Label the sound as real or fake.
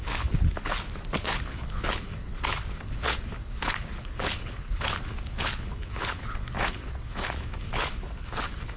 fake